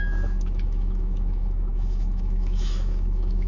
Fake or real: fake